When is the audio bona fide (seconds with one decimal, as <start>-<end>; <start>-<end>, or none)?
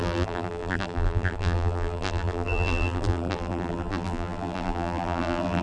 none